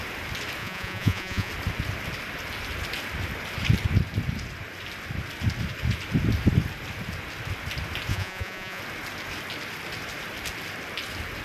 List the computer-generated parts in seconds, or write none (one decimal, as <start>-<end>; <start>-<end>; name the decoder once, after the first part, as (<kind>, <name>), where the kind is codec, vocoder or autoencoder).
0.6-1.5 (vocoder, Vocos); 8.1-8.8